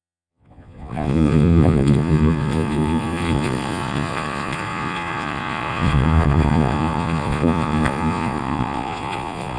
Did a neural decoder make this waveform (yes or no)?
yes